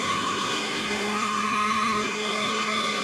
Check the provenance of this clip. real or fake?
fake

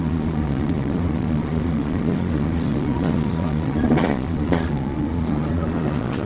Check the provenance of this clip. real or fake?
fake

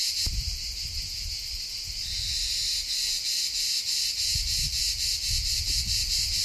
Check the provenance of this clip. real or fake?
real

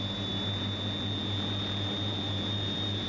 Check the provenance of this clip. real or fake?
real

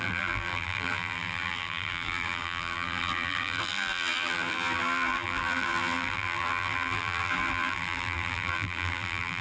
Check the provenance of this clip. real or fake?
fake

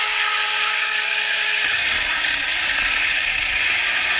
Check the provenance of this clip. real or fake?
real